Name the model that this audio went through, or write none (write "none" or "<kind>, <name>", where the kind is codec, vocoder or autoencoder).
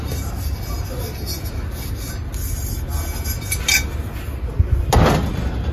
none